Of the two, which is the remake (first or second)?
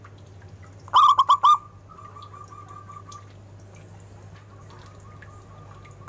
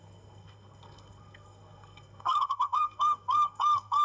second